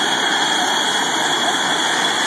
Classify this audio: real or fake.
real